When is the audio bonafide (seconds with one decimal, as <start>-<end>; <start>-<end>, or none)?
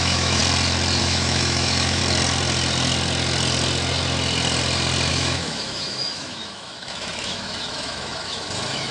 0.4-1.0; 2.0-5.1